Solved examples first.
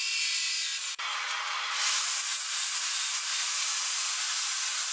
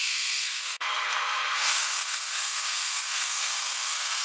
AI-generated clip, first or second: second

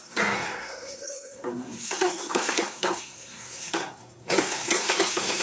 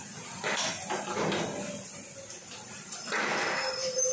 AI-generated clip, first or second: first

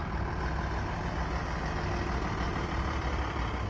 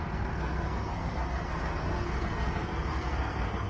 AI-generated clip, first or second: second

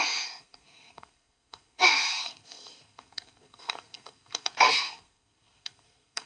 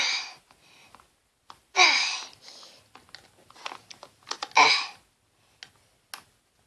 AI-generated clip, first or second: first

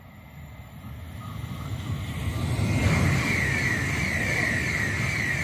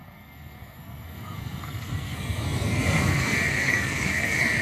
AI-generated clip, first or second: second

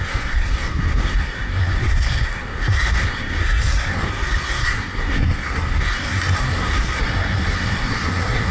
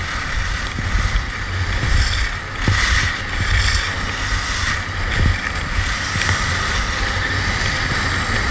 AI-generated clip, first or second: first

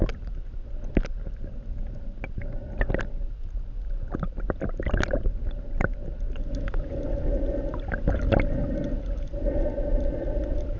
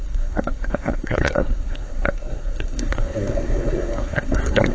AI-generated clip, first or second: second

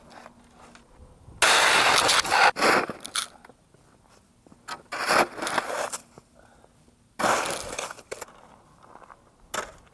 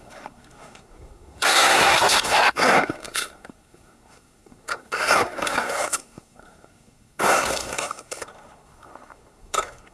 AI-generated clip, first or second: second